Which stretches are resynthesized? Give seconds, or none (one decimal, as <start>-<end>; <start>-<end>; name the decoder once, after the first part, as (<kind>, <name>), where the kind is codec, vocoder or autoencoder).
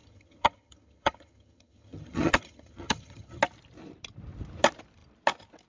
0.0-3.4 (vocoder, HiFi-GAN)